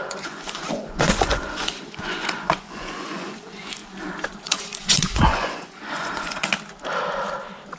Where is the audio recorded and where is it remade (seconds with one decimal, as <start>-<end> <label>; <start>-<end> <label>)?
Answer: 0.0-3.8 remade; 3.8-4.4 recorded; 4.4-6.5 remade; 6.5-7.8 recorded